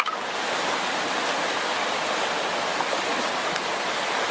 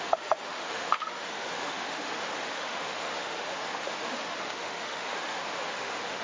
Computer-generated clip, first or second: second